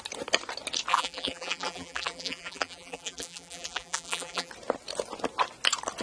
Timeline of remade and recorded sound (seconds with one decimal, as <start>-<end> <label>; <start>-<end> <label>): 0.0-0.9 recorded; 0.9-4.5 remade; 4.5-6.0 recorded